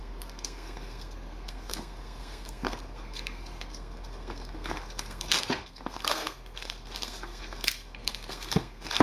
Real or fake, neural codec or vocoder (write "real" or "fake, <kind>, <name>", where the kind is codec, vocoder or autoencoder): fake, codec, SNAC